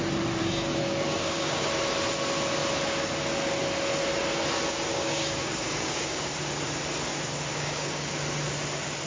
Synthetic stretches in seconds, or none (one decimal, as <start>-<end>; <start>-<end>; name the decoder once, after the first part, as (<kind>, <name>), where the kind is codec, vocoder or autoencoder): 0.4-1.7 (codec, DAC); 4.9-6.3; 7.5-8.1